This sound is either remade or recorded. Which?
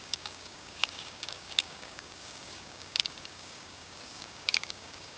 remade